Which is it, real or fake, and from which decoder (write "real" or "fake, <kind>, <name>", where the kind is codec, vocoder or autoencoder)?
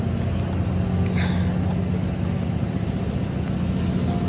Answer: real